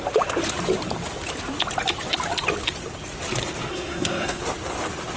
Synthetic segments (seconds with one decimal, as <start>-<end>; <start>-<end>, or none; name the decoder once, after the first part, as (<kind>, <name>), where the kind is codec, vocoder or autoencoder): 3.7-4.4 (codec, SNAC)